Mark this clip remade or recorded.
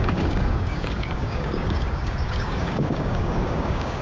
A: remade